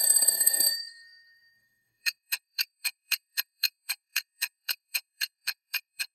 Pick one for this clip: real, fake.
fake